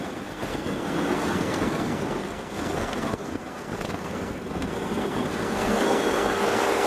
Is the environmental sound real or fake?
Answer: fake